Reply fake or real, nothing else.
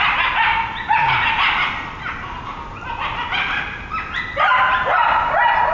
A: real